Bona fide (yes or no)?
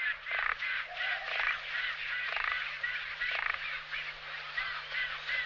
yes